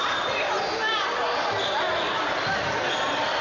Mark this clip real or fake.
real